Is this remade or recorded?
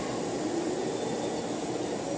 recorded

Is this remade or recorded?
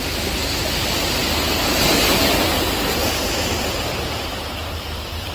recorded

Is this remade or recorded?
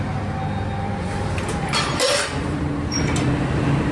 recorded